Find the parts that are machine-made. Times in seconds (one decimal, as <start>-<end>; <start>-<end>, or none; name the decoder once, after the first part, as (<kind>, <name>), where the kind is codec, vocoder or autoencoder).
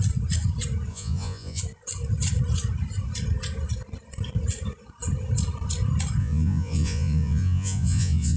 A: 0.9-1.6 (vocoder, Vocos); 6.2-8.4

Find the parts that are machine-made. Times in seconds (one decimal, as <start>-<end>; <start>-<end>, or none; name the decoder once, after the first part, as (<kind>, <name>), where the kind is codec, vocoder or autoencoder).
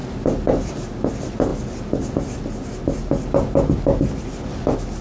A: none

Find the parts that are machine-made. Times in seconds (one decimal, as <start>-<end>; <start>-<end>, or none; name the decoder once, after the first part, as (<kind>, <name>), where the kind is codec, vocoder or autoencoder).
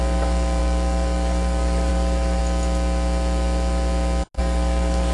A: 0.0-2.4 (codec, DAC); 4.4-5.1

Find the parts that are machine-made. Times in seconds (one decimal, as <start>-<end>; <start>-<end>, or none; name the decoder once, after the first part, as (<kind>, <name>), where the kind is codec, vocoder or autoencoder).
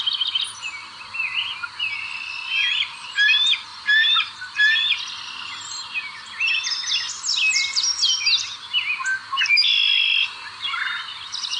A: none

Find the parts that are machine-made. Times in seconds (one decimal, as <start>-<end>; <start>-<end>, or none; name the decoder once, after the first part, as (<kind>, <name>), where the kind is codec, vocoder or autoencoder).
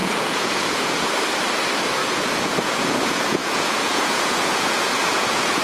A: 0.0-1.1 (vocoder, Vocos); 2.0-5.6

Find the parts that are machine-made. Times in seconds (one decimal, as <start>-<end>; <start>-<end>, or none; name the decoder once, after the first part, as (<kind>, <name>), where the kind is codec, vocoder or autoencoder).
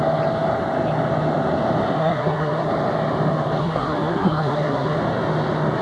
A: 2.0-2.7 (codec, SNAC); 3.6-5.0